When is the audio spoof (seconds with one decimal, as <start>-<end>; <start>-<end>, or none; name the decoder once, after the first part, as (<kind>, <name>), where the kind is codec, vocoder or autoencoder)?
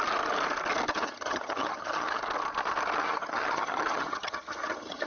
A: 0.9-2.2 (vocoder, HiFi-GAN); 3.0-5.1